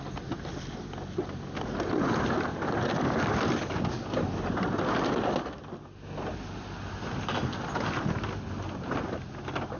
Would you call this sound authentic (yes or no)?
yes